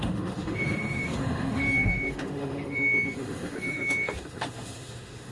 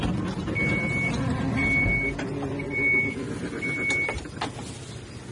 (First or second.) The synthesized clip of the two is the first